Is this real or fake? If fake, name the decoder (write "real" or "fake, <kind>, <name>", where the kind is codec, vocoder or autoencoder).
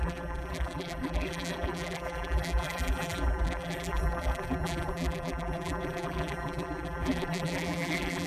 fake, vocoder, BigVGAN v2